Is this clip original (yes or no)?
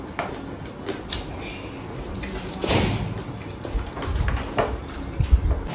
yes